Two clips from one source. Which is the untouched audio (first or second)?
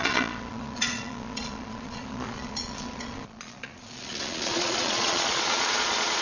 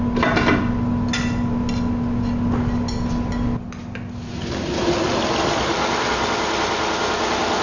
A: second